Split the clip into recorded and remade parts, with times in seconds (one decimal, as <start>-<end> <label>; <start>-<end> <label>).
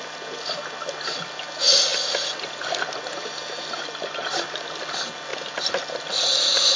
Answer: 0.0-6.8 recorded